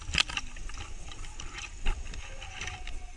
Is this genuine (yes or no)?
yes